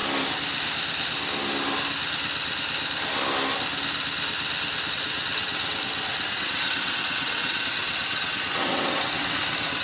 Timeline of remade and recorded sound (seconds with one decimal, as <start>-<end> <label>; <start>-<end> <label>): 0.0-4.9 recorded; 4.9-9.8 remade